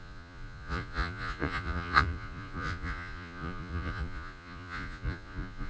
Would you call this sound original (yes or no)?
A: no